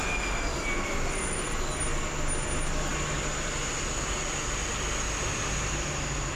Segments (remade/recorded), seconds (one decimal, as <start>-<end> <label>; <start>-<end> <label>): 0.0-6.4 recorded